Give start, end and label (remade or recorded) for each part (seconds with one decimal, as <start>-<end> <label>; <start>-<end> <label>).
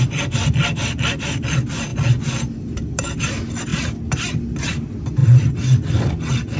0.0-6.6 recorded